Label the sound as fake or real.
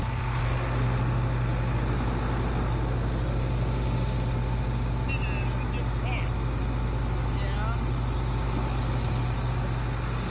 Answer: real